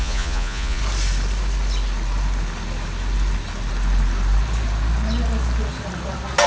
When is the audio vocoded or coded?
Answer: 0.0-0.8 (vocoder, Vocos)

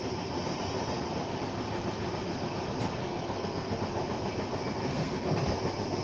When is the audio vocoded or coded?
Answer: 3.0-3.8 (codec, SNAC); 4.8-5.4

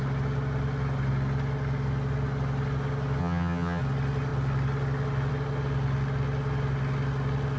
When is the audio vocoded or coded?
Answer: 3.2-3.8 (vocoder, HiFi-GAN)

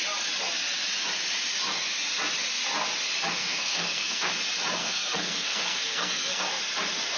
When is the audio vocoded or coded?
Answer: 3.4-4.3 (codec, SNAC); 4.8-6.4

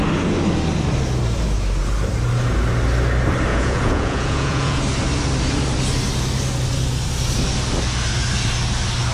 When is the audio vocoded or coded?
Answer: 3.5-4.8 (vocoder, Vocos)